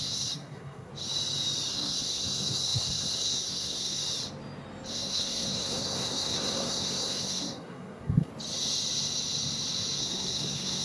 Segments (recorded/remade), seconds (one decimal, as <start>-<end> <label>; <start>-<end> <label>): 0.0-0.9 remade; 0.9-1.7 recorded; 1.7-4.0 remade; 4.0-4.9 recorded; 4.9-8.3 remade; 8.3-10.0 recorded; 10.0-10.8 remade